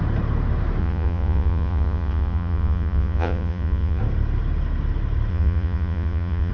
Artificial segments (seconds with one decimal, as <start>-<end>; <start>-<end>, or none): 0.8-4.0; 5.3-6.5